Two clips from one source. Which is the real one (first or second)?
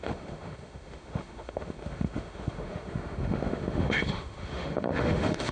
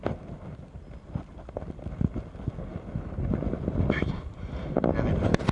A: second